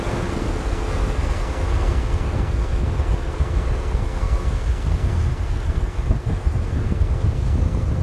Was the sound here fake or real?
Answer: fake